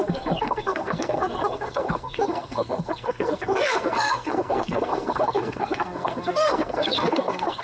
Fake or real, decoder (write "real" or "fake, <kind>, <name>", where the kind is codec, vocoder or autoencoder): fake, codec, SNAC